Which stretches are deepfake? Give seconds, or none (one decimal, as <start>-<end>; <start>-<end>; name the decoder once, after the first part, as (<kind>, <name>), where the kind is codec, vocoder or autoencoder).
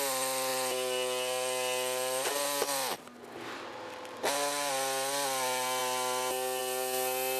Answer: none